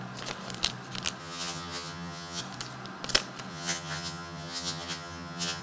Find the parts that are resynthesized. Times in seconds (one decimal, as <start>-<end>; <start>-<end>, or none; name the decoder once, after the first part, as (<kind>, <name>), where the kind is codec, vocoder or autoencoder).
1.2-2.4 (vocoder, HiFi-GAN); 3.5-5.6